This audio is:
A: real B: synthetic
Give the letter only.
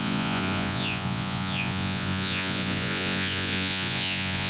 B